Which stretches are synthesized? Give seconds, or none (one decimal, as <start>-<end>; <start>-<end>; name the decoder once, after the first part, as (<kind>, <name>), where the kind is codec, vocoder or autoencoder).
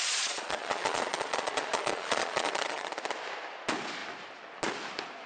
0.0-2.9 (vocoder, Vocos)